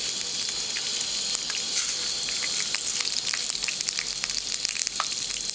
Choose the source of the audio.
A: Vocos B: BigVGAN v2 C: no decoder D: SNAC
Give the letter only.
B